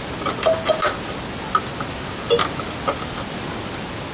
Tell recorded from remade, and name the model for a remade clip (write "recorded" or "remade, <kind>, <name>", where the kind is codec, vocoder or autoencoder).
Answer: recorded